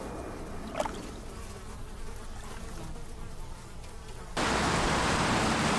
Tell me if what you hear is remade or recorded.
recorded